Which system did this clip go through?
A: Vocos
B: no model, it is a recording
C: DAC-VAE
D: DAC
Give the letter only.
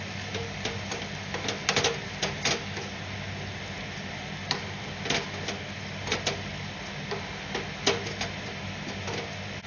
B